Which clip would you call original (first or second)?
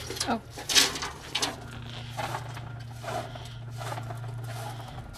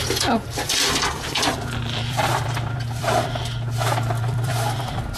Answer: first